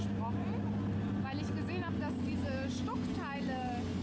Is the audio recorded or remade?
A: recorded